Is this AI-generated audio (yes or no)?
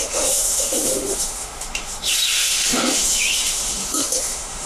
yes